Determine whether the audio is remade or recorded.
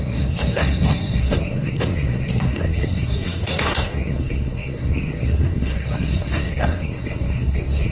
remade